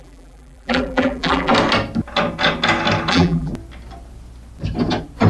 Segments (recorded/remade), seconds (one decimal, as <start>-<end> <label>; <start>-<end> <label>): 0.0-1.5 remade; 1.5-3.1 recorded; 3.1-3.5 remade; 3.5-5.3 recorded